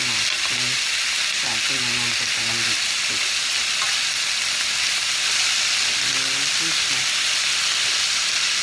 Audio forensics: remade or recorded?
recorded